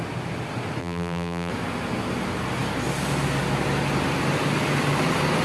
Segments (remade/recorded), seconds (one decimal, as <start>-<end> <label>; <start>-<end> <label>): 0.0-0.8 recorded; 0.8-1.5 remade; 1.5-5.4 recorded